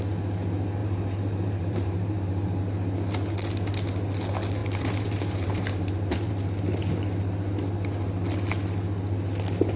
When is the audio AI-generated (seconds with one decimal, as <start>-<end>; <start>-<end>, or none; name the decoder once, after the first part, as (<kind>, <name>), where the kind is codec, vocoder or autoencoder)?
0.8-2.6 (vocoder, BigVGAN v2); 4.6-6.3